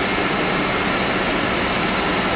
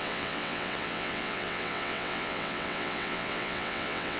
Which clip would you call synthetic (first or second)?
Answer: second